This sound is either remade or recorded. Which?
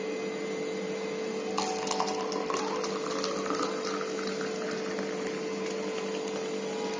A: recorded